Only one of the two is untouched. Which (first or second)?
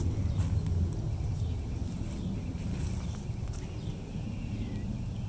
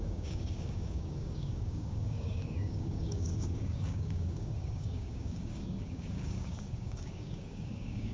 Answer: first